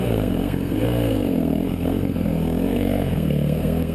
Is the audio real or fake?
fake